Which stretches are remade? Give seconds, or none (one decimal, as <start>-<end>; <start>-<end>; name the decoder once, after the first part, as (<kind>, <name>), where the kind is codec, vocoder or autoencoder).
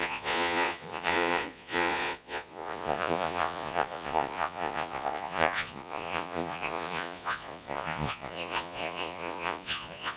0.0-10.2 (vocoder, Vocos)